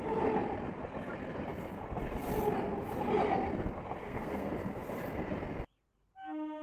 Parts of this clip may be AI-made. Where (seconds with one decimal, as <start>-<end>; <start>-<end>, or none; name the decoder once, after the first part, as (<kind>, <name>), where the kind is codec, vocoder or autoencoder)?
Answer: 4.0-4.5 (codec, SNAC)

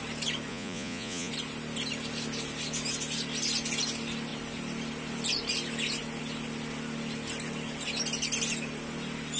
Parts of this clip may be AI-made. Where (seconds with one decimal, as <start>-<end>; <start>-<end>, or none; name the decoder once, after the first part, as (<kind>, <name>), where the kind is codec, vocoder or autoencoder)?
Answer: 0.5-1.3 (vocoder, Vocos)

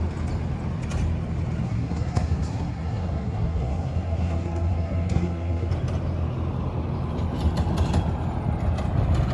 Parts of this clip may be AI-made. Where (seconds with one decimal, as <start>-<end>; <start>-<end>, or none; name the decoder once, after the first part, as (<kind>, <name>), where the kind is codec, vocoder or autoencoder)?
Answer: 1.6-5.7 (codec, SNAC)

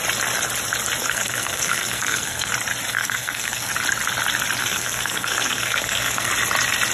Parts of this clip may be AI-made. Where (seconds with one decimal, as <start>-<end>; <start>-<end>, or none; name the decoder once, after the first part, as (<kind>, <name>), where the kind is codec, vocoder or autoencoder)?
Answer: 1.0-2.5 (codec, SNAC); 2.9-3.7; 4.6-6.3

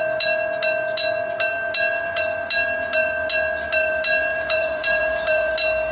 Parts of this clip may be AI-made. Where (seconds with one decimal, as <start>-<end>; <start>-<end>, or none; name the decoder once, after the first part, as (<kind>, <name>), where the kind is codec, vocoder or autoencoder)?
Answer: 4.3-5.5 (vocoder, BigVGAN v2)